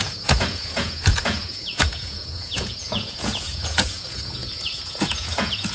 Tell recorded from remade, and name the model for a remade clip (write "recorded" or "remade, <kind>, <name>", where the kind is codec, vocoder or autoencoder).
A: remade, vocoder, Vocos